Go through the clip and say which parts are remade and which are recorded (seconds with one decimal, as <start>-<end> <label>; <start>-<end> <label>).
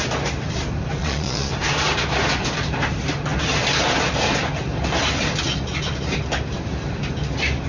0.0-1.0 recorded; 1.0-1.5 remade; 1.5-7.7 recorded